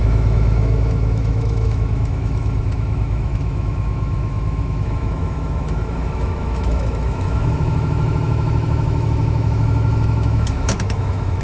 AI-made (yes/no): yes